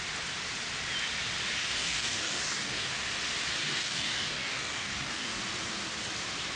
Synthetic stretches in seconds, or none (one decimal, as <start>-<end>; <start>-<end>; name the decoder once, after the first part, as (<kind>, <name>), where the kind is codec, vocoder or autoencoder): 1.6-2.9 (codec, DAC); 3.6-5.4